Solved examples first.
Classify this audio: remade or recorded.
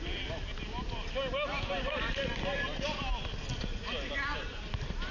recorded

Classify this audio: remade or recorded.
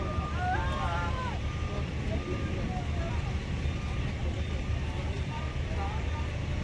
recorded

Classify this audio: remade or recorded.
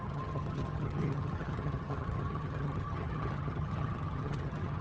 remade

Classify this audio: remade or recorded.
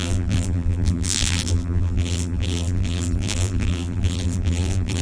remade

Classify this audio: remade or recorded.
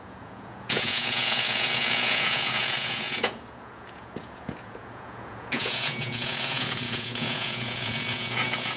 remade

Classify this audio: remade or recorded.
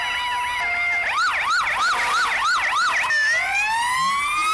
recorded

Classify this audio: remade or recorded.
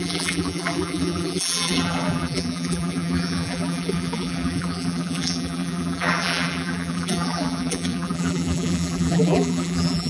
remade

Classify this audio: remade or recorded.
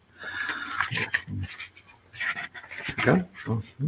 recorded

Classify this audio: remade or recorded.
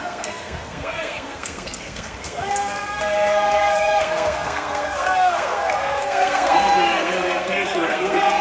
remade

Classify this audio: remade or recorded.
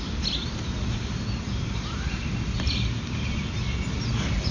recorded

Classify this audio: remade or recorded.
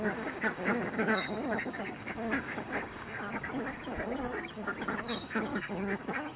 remade